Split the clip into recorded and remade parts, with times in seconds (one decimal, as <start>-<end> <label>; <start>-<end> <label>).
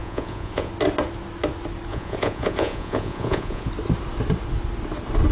0.0-0.7 remade; 0.7-1.9 recorded; 1.9-3.7 remade; 3.7-5.3 recorded